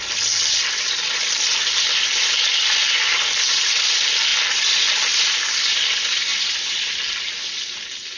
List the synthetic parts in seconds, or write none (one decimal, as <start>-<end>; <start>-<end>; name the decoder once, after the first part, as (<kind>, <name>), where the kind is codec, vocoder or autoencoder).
none